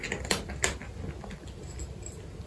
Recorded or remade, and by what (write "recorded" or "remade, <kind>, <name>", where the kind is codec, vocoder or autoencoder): recorded